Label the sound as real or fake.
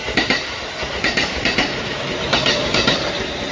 real